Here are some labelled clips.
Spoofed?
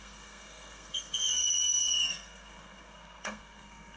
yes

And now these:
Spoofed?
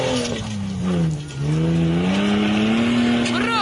no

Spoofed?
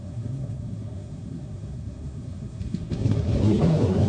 yes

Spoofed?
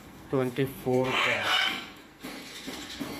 yes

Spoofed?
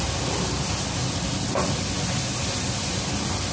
no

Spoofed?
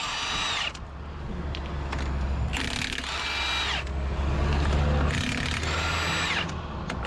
no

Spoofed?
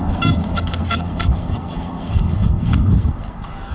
yes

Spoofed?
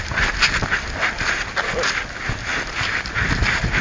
no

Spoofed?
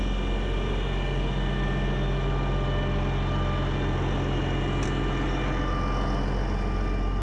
no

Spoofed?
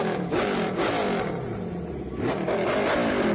no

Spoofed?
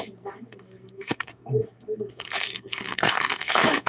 yes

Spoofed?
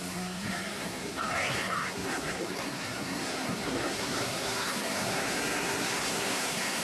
yes